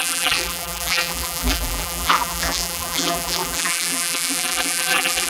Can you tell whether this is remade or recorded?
remade